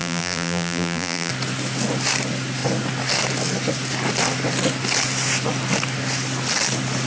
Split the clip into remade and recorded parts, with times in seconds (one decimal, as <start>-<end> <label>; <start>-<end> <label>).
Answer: 0.0-1.3 remade; 1.3-7.1 recorded